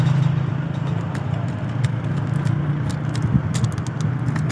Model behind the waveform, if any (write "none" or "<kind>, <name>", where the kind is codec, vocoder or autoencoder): none